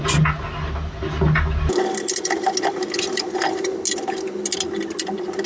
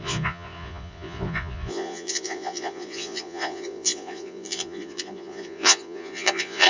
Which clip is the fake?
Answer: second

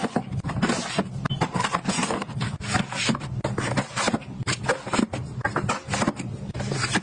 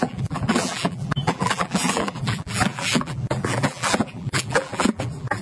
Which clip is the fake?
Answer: second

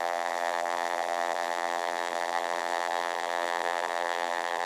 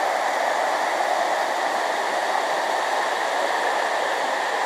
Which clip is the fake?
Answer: first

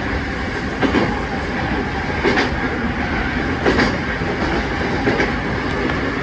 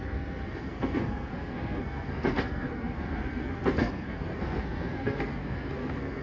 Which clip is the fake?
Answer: second